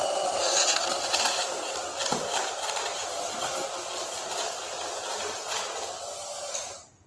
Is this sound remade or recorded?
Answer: recorded